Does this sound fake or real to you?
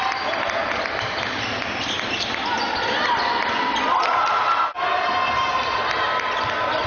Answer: real